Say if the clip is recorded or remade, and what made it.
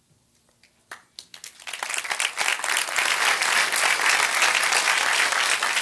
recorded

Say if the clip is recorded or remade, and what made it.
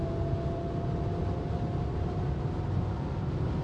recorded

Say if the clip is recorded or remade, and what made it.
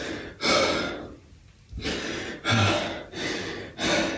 recorded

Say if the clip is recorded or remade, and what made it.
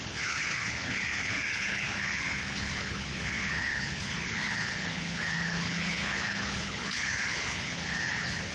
remade, codec, HILCodec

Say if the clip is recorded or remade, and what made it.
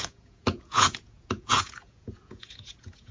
remade, vocoder, Vocos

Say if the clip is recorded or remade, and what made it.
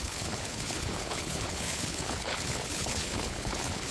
remade, codec, HILCodec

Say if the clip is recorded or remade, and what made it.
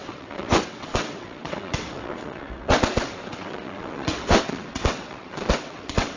remade, vocoder, WaveNeXt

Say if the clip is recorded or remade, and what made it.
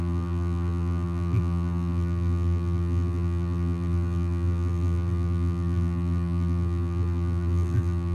remade, vocoder, BigVGAN v2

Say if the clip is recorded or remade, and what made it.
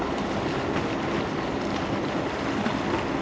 recorded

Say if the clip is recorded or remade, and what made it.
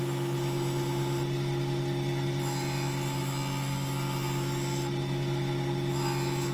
recorded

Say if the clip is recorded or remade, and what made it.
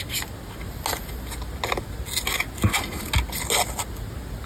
recorded